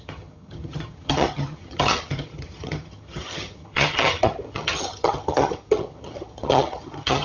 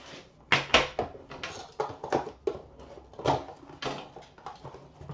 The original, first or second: second